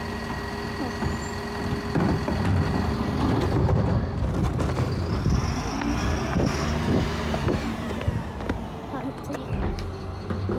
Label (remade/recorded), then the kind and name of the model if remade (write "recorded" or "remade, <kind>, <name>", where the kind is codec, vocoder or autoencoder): recorded